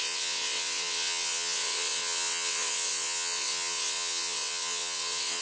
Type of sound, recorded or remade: remade